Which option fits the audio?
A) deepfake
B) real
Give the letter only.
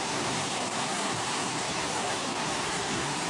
A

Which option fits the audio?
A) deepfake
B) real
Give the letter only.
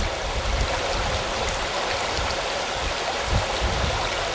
B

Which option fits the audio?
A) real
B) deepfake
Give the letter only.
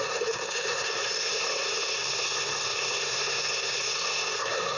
B